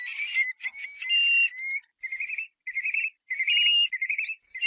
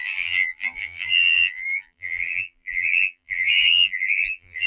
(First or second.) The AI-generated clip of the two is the second